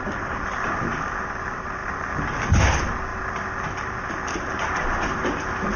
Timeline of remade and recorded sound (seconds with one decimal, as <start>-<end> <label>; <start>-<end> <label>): 0.0-5.8 recorded

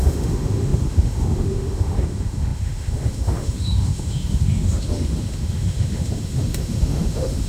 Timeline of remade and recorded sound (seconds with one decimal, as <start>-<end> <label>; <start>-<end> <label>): 0.0-7.5 remade

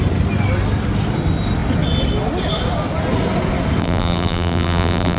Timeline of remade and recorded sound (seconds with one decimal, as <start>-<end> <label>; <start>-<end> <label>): 0.0-3.8 recorded; 3.8-5.2 remade